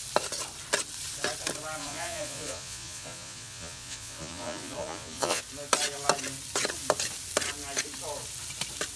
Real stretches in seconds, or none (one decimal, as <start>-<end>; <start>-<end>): 0.0-1.8; 5.4-9.0